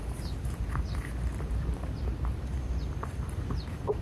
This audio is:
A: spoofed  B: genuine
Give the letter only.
A